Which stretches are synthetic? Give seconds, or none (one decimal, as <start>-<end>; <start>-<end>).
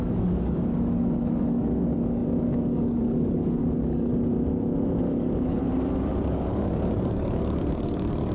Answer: 0.0-4.1; 5.0-5.6; 6.3-8.3